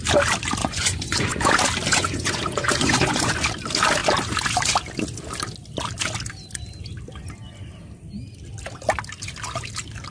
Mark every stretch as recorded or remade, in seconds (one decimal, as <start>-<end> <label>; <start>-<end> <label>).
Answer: 0.0-0.6 recorded; 0.6-1.5 remade; 1.5-1.9 recorded; 1.9-3.3 remade; 3.3-10.1 recorded